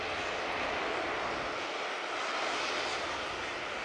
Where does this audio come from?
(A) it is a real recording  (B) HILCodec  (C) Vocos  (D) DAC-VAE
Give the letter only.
A